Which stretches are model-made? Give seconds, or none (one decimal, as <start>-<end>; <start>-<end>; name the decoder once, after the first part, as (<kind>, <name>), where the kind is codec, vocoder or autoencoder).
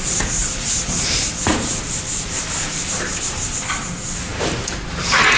0.4-3.6 (vocoder, BigVGAN v2)